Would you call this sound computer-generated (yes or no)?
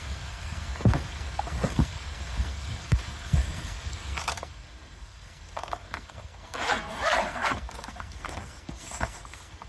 yes